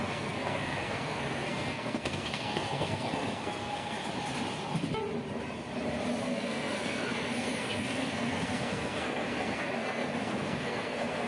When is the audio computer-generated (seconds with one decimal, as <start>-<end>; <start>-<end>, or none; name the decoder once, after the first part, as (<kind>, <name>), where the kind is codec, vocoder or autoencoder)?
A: 0.0-4.0 (codec, SNAC); 6.2-11.3